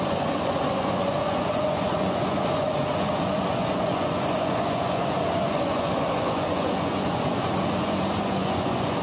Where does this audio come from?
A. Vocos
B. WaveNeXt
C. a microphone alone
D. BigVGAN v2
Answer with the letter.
A